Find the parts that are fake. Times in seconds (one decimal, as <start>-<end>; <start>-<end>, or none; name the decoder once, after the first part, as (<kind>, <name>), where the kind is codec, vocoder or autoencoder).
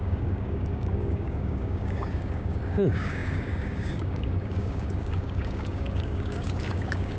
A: 0.0-7.2 (codec, DAC)